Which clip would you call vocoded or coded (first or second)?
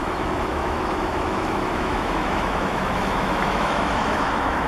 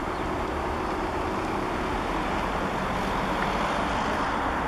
first